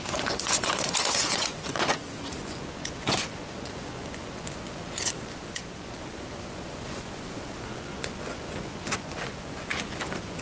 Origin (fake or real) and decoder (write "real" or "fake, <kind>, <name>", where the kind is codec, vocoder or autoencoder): fake, vocoder, Vocos